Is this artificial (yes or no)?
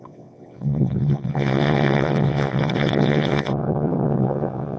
yes